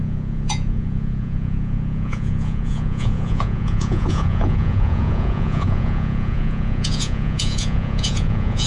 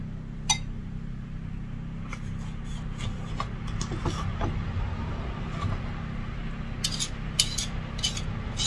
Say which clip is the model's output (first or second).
first